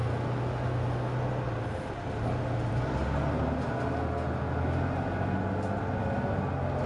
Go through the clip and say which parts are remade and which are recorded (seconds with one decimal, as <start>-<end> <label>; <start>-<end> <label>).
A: 0.0-6.9 recorded